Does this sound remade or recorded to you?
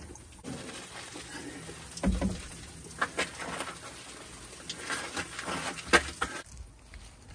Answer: recorded